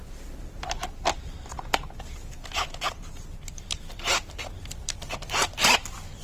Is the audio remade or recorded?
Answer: remade